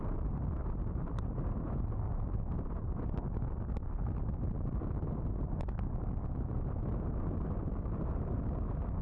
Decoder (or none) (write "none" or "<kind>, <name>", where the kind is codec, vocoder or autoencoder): none